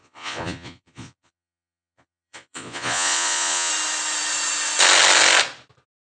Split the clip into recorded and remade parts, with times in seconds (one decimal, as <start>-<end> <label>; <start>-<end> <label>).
0.0-3.7 remade; 3.7-6.2 recorded

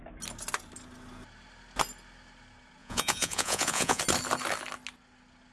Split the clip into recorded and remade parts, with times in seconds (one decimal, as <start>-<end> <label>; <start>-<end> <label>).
0.0-2.8 recorded; 2.8-4.0 remade; 4.0-5.5 recorded

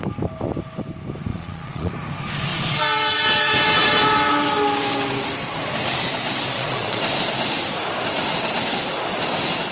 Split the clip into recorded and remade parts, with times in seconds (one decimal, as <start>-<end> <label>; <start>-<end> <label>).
0.0-1.3 recorded; 1.3-1.9 remade; 1.9-6.5 recorded; 6.5-7.0 remade; 7.0-9.7 recorded

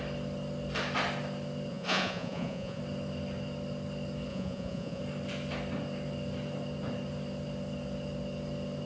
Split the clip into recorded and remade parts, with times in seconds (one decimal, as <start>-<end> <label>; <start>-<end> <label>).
0.0-1.7 recorded; 1.7-2.8 remade; 2.8-4.3 recorded; 4.3-5.0 remade; 5.0-8.9 recorded

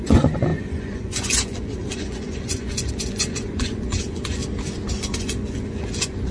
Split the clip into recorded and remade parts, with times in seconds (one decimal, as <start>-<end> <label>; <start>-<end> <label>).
0.0-4.4 remade; 4.4-5.0 recorded; 5.0-6.3 remade

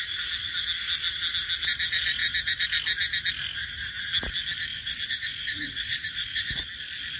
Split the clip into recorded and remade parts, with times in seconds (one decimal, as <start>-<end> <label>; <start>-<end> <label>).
0.0-4.7 recorded; 4.7-6.6 remade; 6.6-7.2 recorded

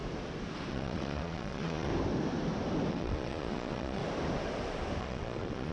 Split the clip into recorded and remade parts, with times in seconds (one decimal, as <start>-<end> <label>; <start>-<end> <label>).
0.0-0.7 recorded; 0.7-1.9 remade; 1.9-2.9 recorded; 2.9-4.0 remade; 4.0-5.0 recorded; 5.0-5.7 remade

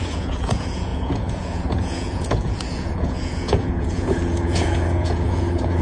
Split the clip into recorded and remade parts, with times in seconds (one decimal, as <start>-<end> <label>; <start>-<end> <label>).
0.0-5.8 remade